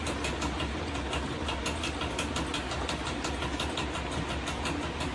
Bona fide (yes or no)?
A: yes